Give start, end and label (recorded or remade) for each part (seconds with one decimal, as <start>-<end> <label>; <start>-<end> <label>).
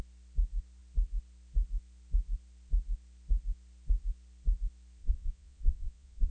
0.0-5.0 recorded; 5.0-6.3 remade